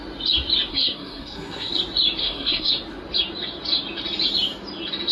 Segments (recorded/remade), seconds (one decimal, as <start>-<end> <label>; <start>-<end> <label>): 0.0-0.7 recorded; 0.7-1.7 remade; 1.7-2.2 recorded; 2.2-2.7 remade; 2.7-5.1 recorded